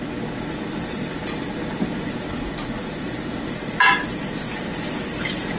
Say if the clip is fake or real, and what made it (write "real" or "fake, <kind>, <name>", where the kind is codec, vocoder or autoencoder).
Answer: real